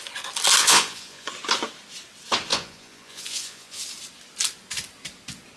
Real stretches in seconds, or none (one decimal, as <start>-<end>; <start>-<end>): 0.0-0.6; 1.3-2.5; 3.8-5.6